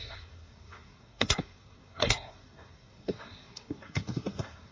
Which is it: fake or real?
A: fake